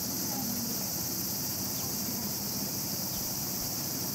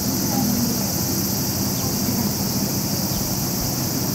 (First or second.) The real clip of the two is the second